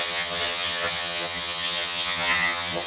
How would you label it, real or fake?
fake